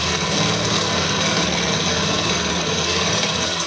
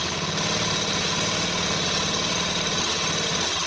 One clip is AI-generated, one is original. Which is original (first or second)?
second